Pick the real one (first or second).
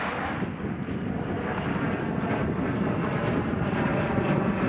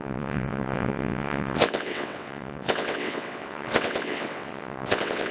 first